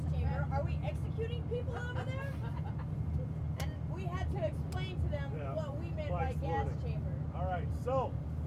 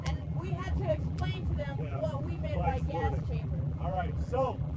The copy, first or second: second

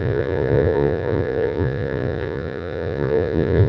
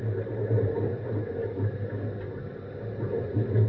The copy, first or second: first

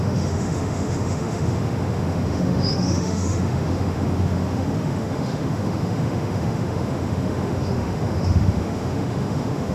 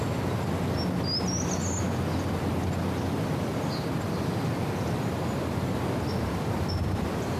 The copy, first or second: first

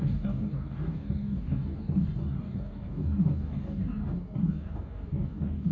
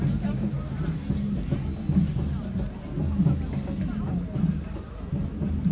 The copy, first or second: first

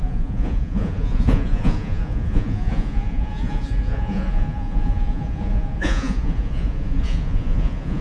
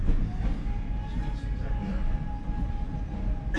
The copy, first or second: first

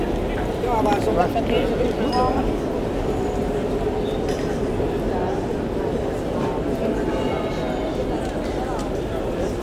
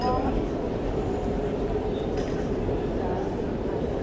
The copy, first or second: second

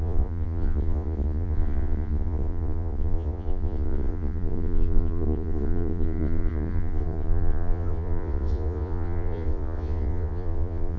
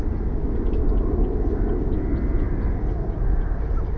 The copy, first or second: first